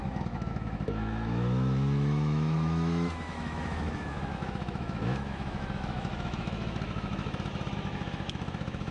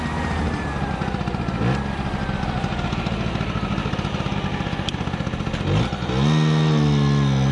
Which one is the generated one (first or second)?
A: first